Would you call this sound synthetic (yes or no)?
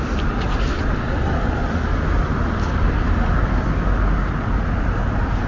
no